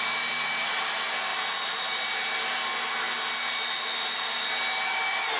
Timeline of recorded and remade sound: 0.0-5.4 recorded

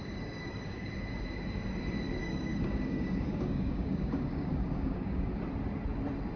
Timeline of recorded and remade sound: 0.0-0.9 remade; 0.9-2.2 recorded; 2.2-5.4 remade; 5.4-6.4 recorded

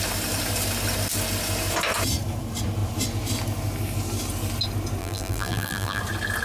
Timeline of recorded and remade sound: 0.0-5.0 recorded; 5.0-6.0 remade; 6.0-6.4 recorded

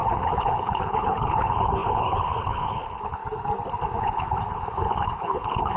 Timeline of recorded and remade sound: 0.0-3.2 remade; 3.2-4.0 recorded; 4.0-5.8 remade

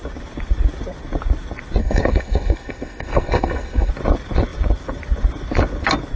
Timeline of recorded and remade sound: 0.0-1.8 recorded; 1.8-3.9 remade; 3.9-6.2 recorded

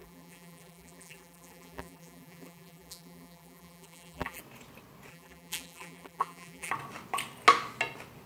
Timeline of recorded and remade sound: 0.0-4.4 remade; 4.4-5.1 recorded; 5.1-6.7 remade; 6.7-8.3 recorded

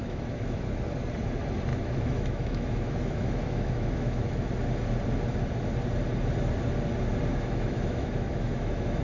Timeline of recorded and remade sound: 0.0-0.7 remade; 0.7-1.7 recorded; 1.7-4.5 remade; 4.5-7.3 recorded; 7.3-9.0 remade

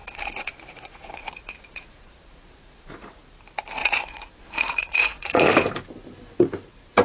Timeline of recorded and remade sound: 0.0-3.2 remade; 3.2-3.8 recorded; 3.8-5.5 remade; 5.5-7.0 recorded